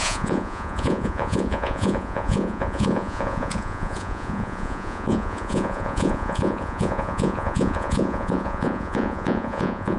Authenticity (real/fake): fake